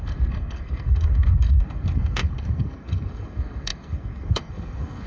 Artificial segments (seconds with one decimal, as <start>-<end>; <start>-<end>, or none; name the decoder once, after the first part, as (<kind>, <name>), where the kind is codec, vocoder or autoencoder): 0.0-5.1 (codec, SNAC)